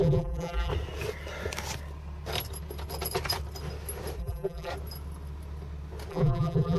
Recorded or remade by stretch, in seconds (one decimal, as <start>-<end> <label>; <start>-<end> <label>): 0.0-0.7 remade; 0.7-4.2 recorded; 4.2-4.7 remade; 4.7-6.1 recorded; 6.1-6.8 remade